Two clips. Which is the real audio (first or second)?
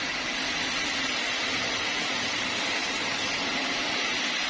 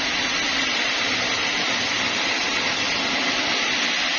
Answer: first